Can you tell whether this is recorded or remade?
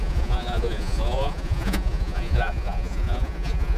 remade